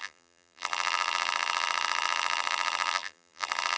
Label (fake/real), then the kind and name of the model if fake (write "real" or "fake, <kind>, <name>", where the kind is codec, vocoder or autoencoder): fake, vocoder, BigVGAN v2